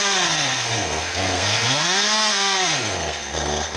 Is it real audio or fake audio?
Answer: fake